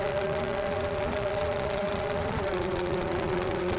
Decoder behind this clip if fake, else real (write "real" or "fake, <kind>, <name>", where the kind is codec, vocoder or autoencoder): fake, vocoder, Vocos